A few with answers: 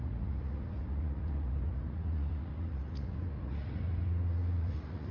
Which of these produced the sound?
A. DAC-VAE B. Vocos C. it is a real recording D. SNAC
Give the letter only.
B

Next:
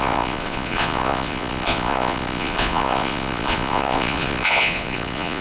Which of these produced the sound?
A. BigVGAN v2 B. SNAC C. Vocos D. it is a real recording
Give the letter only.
C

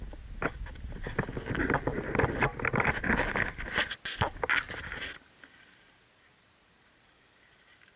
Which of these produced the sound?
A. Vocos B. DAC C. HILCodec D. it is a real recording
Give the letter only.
D